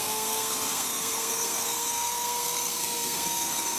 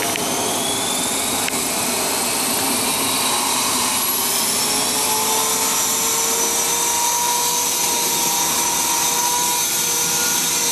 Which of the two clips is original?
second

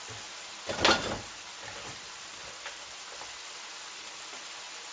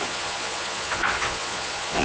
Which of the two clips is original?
first